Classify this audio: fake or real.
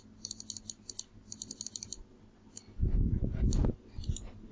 real